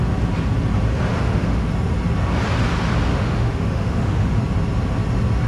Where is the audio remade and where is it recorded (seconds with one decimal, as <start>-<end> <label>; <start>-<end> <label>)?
0.0-1.1 recorded; 1.1-1.7 remade; 1.7-3.1 recorded; 3.1-4.4 remade; 4.4-5.5 recorded